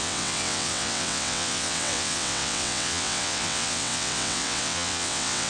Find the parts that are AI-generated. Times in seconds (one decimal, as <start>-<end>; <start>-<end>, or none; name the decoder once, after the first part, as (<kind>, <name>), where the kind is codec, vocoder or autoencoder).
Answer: 0.0-5.5 (vocoder, WaveNeXt)